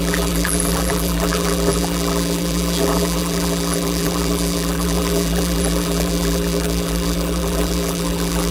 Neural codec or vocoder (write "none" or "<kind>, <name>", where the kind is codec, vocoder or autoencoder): vocoder, BigVGAN v2